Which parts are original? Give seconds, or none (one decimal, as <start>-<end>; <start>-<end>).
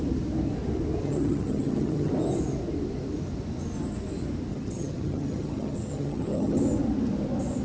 0.0-1.0; 2.1-4.5; 6.6-7.6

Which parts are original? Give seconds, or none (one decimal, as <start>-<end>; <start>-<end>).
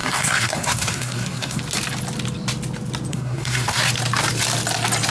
1.6-3.1; 3.9-5.1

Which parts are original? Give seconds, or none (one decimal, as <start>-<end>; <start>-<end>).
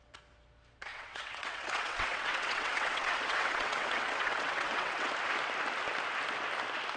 0.0-0.9; 5.1-7.0